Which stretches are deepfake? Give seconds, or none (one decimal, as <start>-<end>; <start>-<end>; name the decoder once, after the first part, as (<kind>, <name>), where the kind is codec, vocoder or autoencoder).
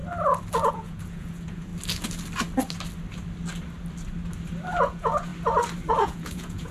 0.7-1.7 (vocoder, Vocos); 4.8-5.3; 5.9-6.7